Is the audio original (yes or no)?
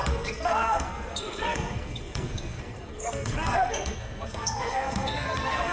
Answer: no